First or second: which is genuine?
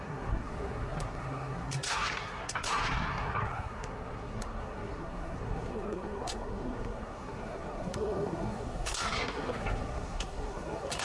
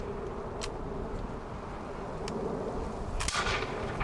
second